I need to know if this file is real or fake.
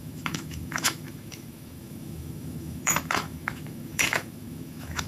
fake